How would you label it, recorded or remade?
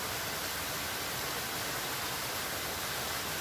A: recorded